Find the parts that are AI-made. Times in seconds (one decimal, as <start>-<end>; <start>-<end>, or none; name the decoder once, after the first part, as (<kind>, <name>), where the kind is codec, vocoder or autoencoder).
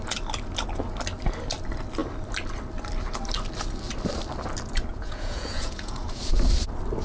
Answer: 4.9-6.2 (vocoder, Vocos)